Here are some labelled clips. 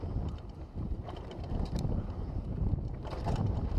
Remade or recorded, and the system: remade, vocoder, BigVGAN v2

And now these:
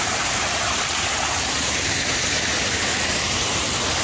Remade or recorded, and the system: remade, vocoder, BigVGAN v2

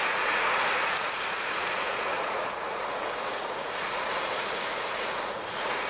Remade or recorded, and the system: remade, vocoder, Vocos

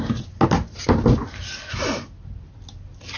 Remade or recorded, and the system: recorded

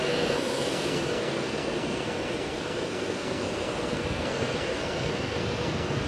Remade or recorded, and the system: remade, codec, SNAC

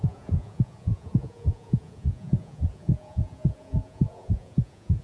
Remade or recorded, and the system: remade, vocoder, Vocos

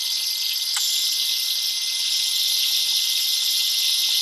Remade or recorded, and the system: recorded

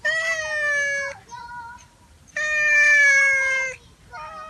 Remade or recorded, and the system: recorded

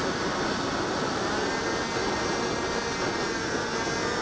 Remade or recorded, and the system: recorded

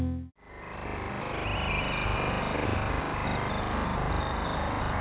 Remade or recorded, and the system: recorded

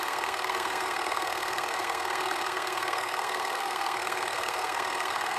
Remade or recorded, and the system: remade, codec, SNAC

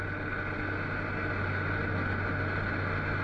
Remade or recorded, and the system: recorded